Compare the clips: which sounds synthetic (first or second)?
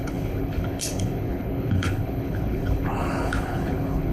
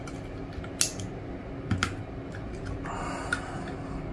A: first